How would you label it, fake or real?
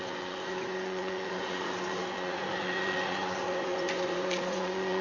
fake